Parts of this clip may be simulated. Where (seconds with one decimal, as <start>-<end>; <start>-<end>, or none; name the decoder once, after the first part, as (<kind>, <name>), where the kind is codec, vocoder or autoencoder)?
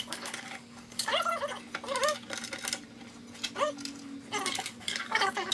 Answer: 0.0-1.1 (codec, DAC); 4.4-5.5